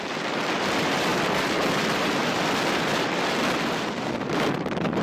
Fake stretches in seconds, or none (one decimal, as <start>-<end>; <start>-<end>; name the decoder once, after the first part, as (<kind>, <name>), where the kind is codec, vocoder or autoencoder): 0.0-5.0 (vocoder, BigVGAN v2)